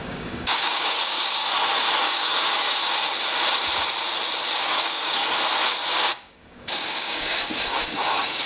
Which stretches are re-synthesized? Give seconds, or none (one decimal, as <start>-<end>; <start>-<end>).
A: 0.0-1.4; 2.0-2.8; 4.5-5.2; 5.9-8.5